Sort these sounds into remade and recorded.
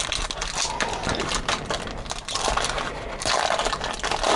recorded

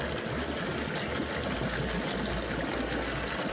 recorded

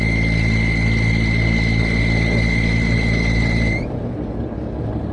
recorded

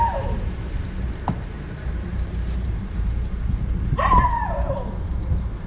remade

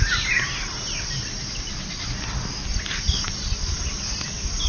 recorded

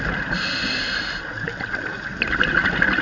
recorded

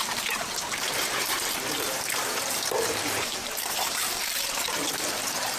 remade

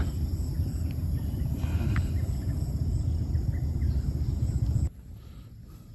recorded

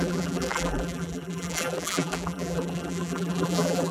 remade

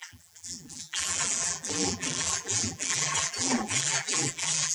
remade